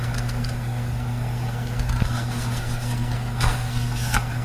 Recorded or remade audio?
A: remade